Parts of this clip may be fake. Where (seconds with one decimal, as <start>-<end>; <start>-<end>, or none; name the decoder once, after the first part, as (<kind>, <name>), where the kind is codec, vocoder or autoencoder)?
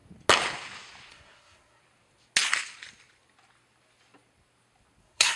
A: 1.1-1.8 (codec, SNAC); 5.0-5.4